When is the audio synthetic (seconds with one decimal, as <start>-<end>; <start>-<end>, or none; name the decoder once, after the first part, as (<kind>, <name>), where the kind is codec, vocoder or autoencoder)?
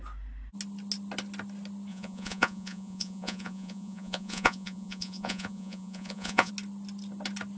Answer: 1.9-6.5 (vocoder, Vocos)